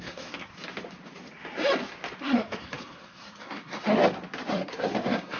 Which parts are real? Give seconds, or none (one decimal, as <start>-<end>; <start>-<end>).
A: 0.5-2.2; 4.0-4.5